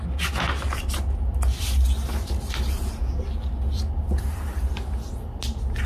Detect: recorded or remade recorded